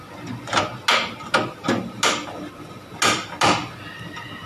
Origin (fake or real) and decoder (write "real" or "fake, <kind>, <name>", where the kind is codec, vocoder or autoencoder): real